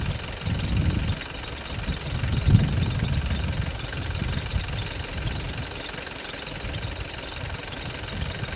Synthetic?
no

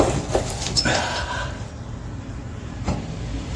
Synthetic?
yes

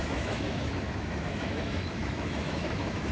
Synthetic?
yes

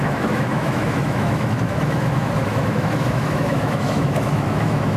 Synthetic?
yes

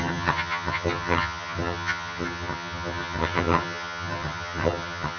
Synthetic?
yes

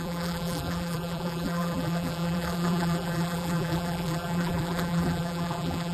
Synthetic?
yes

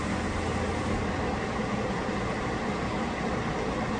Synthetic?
no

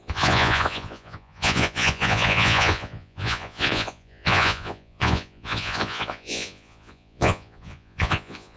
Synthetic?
yes